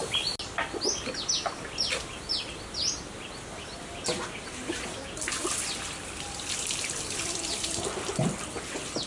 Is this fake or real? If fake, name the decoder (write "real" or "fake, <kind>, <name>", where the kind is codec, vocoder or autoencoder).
real